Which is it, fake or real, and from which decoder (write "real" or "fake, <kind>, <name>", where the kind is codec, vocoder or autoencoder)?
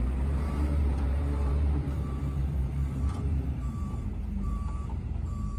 fake, vocoder, BigVGAN v2